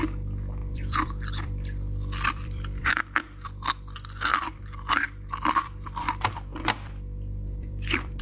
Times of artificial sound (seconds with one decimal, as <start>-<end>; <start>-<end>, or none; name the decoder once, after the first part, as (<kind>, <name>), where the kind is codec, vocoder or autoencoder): 0.6-2.9 (vocoder, BigVGAN v2); 4.3-8.2